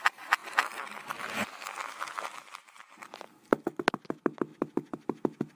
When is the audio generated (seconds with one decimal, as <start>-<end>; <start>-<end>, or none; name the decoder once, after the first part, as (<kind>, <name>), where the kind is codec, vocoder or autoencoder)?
none